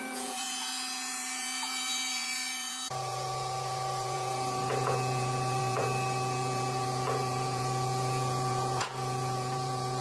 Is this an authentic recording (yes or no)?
no